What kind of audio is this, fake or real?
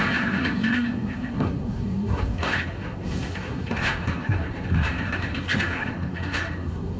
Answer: fake